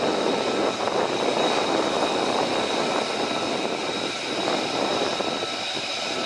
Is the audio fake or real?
real